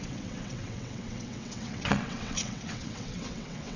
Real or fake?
fake